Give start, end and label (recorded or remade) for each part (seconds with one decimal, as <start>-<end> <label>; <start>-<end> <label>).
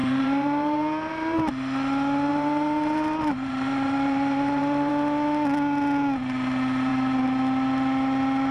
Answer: 0.0-1.5 remade; 1.5-2.3 recorded; 2.3-4.9 remade; 4.9-8.5 recorded